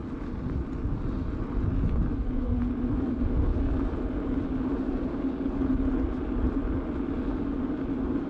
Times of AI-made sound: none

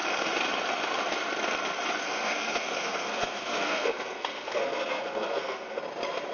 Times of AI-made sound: 2.0-5.8

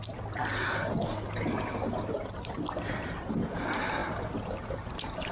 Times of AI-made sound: 4.0-4.6